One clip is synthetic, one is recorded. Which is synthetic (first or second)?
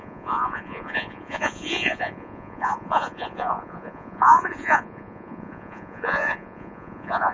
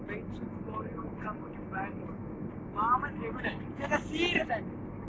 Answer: first